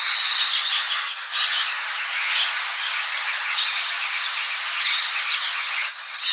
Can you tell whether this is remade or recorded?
remade